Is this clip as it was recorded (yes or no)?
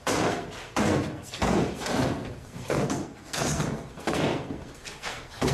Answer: no